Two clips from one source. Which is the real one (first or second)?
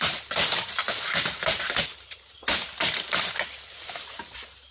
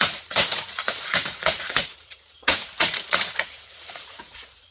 first